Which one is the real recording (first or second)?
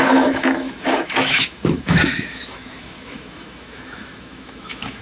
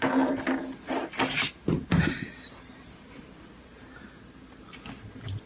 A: second